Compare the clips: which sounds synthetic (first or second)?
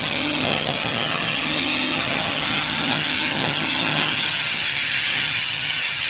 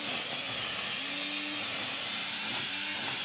first